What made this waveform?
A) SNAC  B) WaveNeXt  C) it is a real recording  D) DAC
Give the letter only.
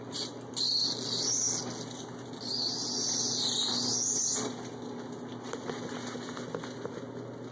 C